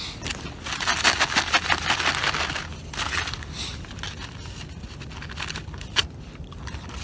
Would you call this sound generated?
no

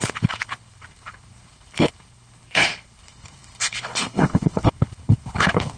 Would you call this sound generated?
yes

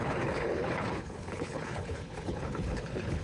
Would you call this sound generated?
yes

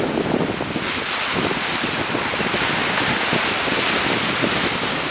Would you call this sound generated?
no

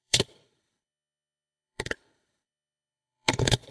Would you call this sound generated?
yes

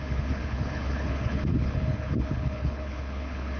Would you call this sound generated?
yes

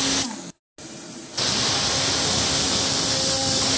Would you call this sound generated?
no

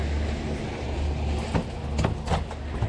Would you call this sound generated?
no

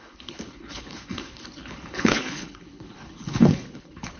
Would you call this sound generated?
yes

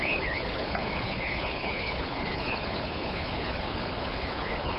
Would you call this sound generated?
yes